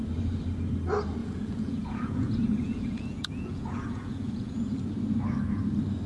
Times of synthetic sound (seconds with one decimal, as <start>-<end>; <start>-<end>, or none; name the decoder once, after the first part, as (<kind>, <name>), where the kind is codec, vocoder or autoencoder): 1.2-4.9 (vocoder, Vocos)